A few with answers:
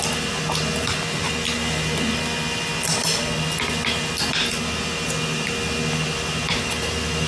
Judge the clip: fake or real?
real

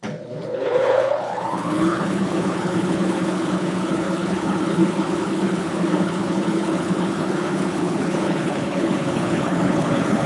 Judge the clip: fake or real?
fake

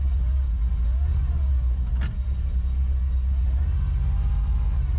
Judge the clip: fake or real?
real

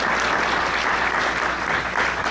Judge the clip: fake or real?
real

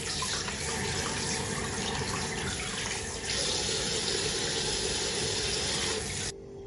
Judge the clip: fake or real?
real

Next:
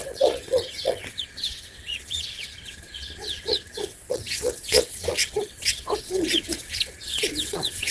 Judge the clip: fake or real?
fake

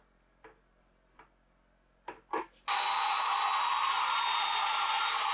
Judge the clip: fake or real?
real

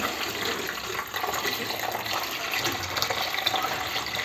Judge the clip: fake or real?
real